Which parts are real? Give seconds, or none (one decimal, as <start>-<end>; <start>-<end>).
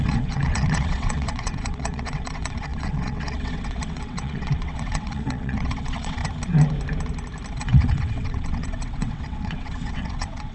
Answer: 6.2-7.5